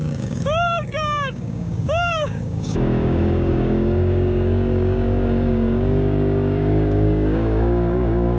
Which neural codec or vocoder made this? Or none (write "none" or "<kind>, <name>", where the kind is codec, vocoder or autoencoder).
codec, DAC